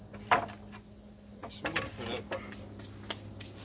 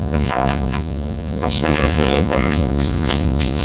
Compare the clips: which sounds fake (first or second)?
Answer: second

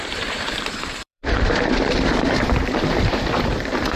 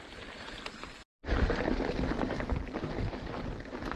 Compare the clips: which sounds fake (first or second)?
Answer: first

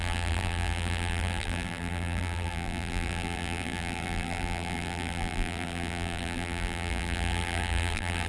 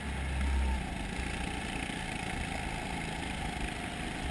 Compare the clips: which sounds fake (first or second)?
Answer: first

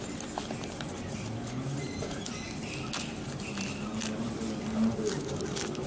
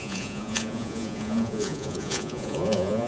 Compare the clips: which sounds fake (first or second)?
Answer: second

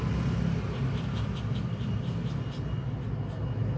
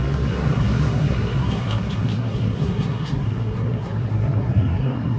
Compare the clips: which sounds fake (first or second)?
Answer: second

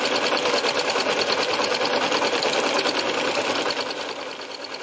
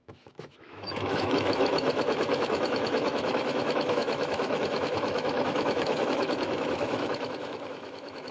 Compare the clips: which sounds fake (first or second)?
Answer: second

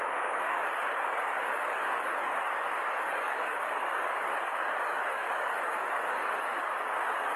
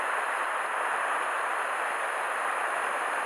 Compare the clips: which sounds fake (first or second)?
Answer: first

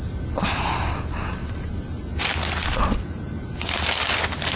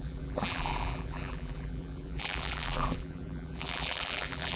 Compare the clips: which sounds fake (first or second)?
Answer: second